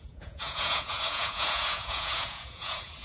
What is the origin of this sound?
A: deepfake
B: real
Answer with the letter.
A